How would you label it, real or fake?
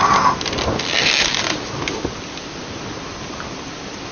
real